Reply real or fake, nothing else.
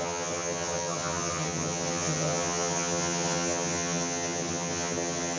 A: fake